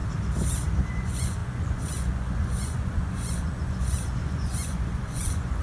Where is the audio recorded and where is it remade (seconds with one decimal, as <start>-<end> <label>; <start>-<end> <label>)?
0.0-0.9 recorded; 0.9-5.6 remade